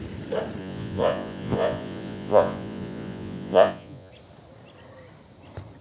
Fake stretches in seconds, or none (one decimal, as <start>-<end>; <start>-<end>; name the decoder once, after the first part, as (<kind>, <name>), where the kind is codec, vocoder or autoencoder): 0.6-4.1 (vocoder, Vocos)